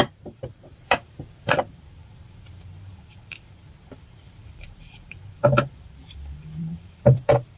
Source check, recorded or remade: remade